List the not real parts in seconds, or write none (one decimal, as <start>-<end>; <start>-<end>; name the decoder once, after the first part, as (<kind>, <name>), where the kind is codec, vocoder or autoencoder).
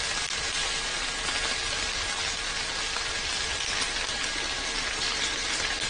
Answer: none